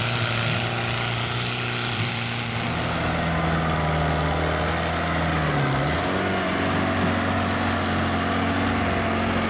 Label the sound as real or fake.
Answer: real